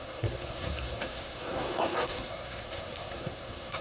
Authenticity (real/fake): fake